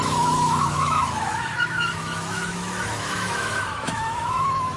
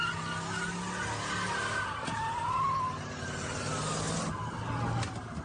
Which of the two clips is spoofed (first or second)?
first